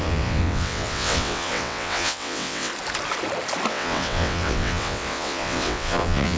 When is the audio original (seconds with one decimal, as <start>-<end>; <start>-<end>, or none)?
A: 2.7-3.7